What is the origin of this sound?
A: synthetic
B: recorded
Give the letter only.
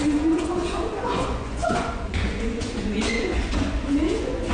A